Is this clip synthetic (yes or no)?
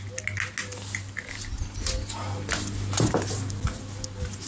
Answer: no